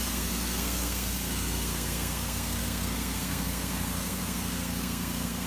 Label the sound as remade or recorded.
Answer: remade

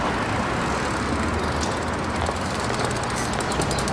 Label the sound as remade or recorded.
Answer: recorded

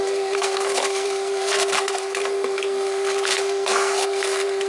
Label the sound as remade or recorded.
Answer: remade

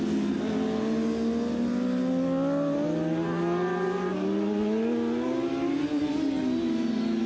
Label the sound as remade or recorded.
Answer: recorded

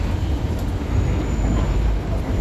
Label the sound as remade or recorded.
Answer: recorded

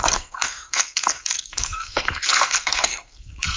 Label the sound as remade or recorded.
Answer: remade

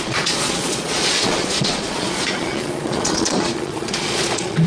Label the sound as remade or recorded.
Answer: remade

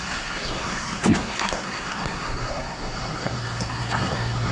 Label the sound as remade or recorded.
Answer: remade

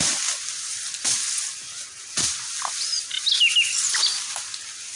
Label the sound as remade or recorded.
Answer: recorded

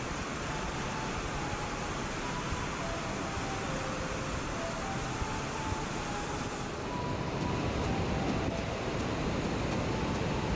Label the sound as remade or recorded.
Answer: recorded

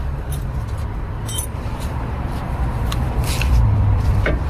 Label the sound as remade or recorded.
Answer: remade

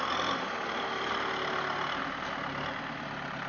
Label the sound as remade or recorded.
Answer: recorded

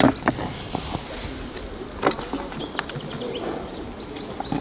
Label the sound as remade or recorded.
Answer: recorded